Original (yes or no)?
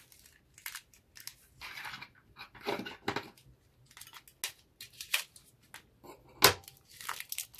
yes